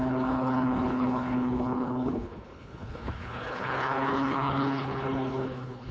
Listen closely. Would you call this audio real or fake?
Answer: fake